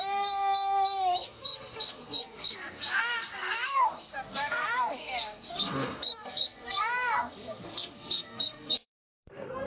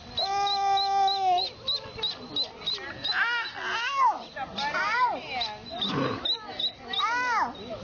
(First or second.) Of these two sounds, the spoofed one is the first